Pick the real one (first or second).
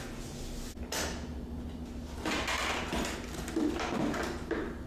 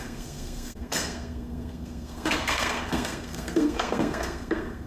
first